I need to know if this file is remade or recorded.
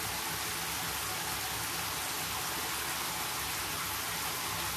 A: recorded